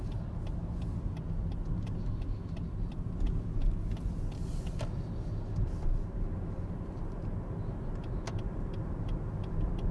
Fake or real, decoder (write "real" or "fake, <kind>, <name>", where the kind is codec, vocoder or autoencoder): real